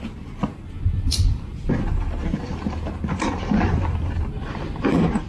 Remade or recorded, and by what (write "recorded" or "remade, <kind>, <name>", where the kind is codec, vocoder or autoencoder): remade, vocoder, BigVGAN v2